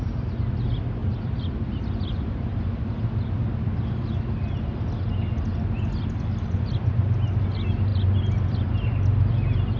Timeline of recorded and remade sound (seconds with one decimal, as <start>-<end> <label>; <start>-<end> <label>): 0.0-1.0 recorded; 1.0-1.8 remade; 1.8-9.8 recorded